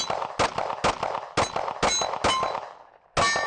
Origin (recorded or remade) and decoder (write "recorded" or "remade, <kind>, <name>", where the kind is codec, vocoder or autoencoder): recorded